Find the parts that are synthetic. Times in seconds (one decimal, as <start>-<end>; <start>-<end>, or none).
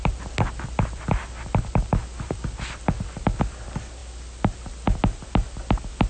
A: none